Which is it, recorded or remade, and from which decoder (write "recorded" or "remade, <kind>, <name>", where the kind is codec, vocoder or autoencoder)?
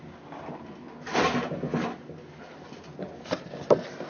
recorded